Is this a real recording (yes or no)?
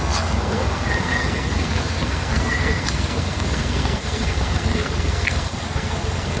no